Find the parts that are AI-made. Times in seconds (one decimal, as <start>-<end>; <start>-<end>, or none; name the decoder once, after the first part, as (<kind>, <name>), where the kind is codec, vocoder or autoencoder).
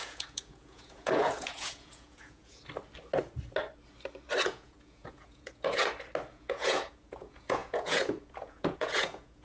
0.0-2.6 (vocoder, Vocos); 4.4-5.8; 6.3-9.4